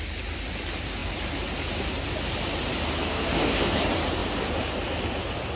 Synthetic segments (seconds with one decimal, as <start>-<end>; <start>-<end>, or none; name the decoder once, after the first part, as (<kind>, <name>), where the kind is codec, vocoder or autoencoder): 3.1-3.8 (codec, SNAC)

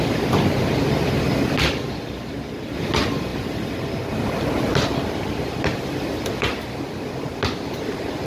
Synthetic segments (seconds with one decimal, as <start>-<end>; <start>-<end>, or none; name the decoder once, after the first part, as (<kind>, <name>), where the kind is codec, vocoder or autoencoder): none

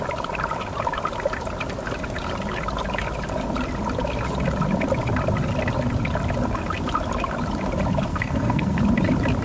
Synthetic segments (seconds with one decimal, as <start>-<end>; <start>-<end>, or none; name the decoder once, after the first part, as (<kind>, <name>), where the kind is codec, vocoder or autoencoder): 8.1-8.8 (codec, SNAC)

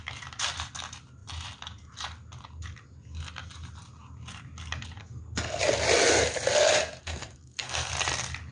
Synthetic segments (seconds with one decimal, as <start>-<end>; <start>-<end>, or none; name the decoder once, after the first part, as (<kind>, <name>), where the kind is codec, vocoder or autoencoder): 5.0-5.6 (codec, SNAC); 7.0-7.9